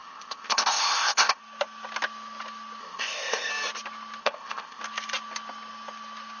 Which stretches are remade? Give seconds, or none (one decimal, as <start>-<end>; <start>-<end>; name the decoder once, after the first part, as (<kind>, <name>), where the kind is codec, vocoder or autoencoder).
0.0-1.4 (codec, ZipCodec); 2.8-3.5; 4.2-4.8